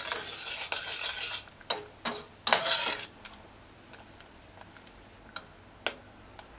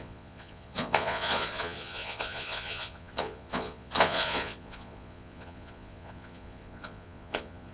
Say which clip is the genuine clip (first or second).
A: first